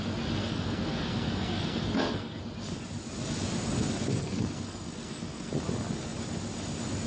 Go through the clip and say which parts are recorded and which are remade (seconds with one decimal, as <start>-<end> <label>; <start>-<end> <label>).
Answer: 0.0-0.4 recorded; 0.4-2.4 remade; 2.4-4.1 recorded; 4.1-5.5 remade; 5.5-7.1 recorded